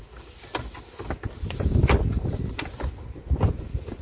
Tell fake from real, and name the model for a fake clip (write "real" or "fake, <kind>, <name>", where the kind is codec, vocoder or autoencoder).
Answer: real